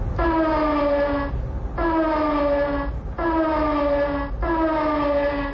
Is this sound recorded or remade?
recorded